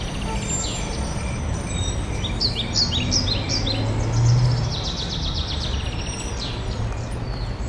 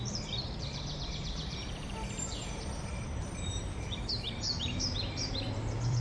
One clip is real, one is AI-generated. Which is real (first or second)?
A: first